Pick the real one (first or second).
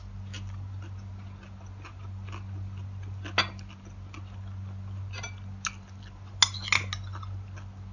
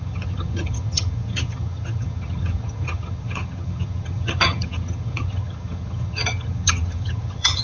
first